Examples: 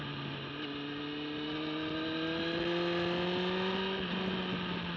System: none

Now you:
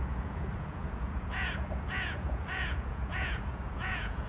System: vocoder, Vocos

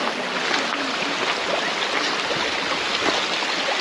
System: none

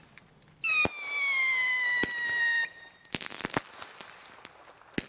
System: none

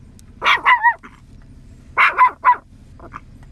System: none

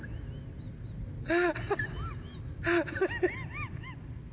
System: none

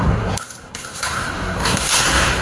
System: codec, SNAC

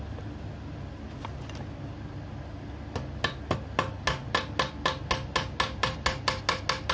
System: none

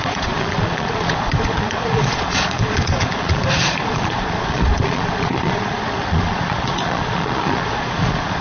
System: vocoder, Vocos